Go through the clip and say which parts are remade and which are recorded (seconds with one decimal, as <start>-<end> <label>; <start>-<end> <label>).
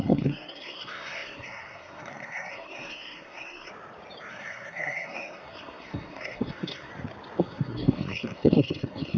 0.0-3.7 remade; 3.7-4.3 recorded; 4.3-6.9 remade; 6.9-7.4 recorded; 7.4-9.2 remade